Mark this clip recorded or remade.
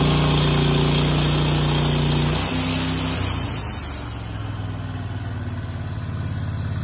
recorded